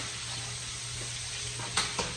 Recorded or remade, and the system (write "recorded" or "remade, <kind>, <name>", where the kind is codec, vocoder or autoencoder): recorded